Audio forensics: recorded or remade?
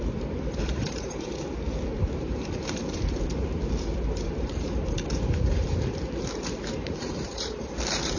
remade